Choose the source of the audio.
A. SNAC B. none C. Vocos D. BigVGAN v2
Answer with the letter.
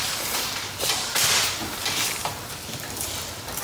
D